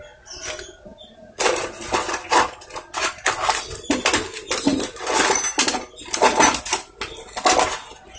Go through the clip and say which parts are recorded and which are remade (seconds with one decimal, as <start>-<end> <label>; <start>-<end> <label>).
0.0-8.2 recorded